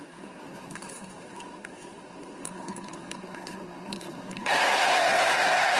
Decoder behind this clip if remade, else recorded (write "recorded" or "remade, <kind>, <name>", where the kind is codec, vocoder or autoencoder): remade, codec, SNAC